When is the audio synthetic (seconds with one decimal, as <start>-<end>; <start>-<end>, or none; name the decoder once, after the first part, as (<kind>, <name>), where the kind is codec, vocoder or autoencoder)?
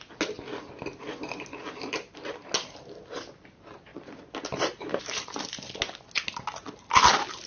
1.6-2.5 (vocoder, BigVGAN v2); 3.9-5.5